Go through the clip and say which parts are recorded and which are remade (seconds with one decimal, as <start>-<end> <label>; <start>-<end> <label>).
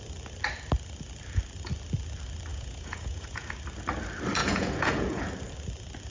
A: 0.0-2.5 recorded; 2.5-3.5 remade; 3.5-4.4 recorded; 4.4-5.3 remade; 5.3-6.1 recorded